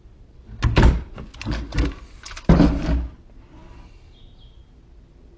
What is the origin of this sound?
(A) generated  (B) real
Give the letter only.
B